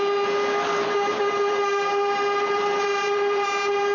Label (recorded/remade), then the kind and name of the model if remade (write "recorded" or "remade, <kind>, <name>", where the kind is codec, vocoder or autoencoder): recorded